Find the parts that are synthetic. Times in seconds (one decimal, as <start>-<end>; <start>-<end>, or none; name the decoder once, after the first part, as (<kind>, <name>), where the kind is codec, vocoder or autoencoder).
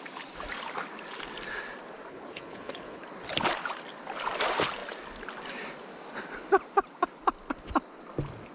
2.1-3.0 (codec, HILCodec)